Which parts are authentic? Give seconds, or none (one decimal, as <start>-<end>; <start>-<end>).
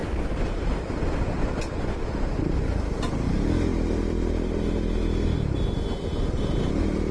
2.4-3.7; 4.3-7.1